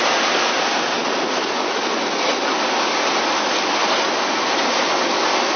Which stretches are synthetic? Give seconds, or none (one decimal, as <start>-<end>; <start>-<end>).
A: none